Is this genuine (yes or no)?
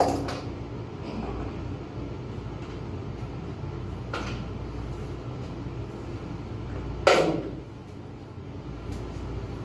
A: yes